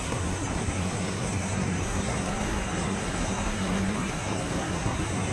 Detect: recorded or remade remade